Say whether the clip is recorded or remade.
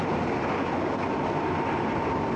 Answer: remade